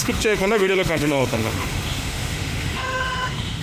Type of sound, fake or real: fake